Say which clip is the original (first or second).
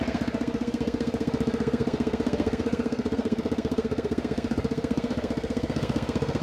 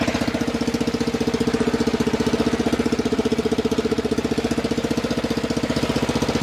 second